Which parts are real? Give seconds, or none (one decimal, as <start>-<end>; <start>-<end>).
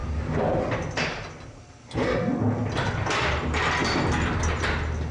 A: 0.0-5.1